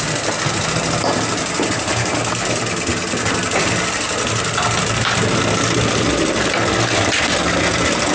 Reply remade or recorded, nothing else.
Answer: recorded